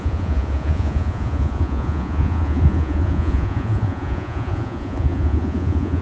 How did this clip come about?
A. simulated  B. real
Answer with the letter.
A